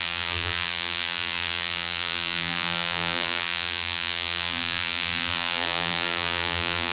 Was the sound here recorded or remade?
remade